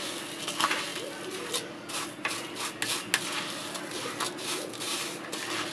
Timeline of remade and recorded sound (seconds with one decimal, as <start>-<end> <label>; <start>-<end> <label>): 0.0-5.7 recorded